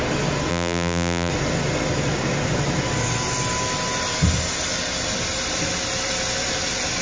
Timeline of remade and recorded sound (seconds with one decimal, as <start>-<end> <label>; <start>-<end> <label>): 0.0-0.5 recorded; 0.5-1.3 remade; 1.3-7.0 recorded